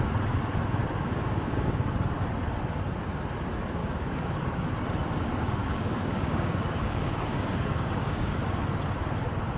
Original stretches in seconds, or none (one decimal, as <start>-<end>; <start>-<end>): 0.0-0.8; 1.9-3.8; 4.7-5.6; 8.4-9.6